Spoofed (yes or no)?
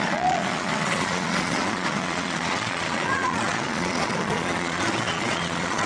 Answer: yes